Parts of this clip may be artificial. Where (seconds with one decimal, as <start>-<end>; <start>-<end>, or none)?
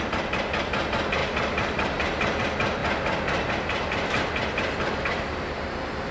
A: none